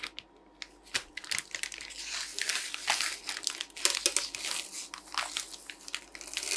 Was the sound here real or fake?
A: real